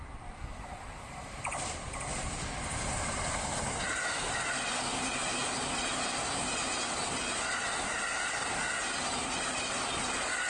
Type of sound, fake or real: real